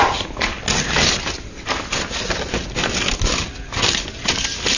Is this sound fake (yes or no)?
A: no